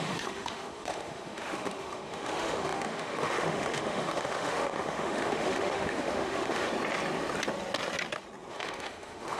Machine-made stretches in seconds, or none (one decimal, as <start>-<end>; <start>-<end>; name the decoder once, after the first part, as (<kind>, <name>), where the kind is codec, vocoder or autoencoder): 0.0-6.7 (autoencoder, DAC-VAE); 8.5-9.4